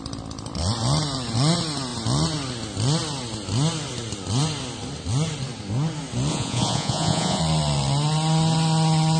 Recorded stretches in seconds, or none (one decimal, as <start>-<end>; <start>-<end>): 0.0-6.3; 7.4-9.2